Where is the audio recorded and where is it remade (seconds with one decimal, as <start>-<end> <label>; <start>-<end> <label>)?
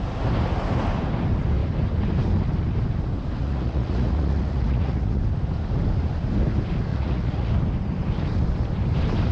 0.0-3.4 recorded; 3.4-5.2 remade; 5.2-6.9 recorded; 6.9-7.5 remade; 7.5-9.3 recorded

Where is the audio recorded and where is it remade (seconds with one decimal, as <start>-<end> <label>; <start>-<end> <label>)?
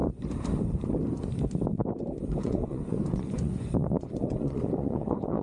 0.0-2.3 recorded; 2.3-5.4 remade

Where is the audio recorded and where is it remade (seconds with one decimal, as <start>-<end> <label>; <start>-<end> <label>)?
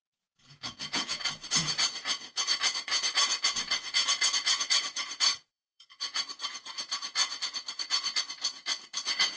0.0-9.4 remade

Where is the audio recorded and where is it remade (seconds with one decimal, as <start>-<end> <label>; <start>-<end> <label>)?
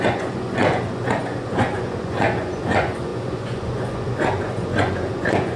0.0-5.6 remade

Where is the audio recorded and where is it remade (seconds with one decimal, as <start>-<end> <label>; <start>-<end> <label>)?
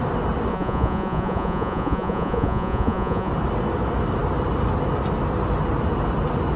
0.0-0.5 recorded; 0.5-3.3 remade; 3.3-6.6 recorded